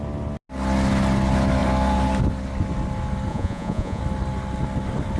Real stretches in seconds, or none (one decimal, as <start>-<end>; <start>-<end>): 0.0-3.3; 4.0-5.2